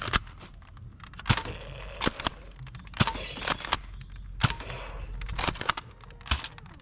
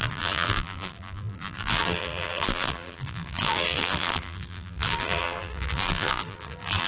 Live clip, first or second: first